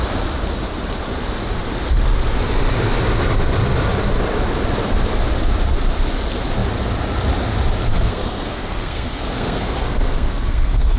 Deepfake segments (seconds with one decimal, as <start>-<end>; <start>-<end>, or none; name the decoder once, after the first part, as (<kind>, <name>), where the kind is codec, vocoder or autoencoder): 7.9-11.0 (codec, SNAC)